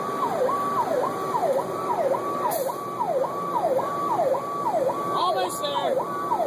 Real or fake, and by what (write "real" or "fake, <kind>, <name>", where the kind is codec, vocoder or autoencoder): real